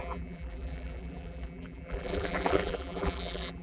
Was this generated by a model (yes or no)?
yes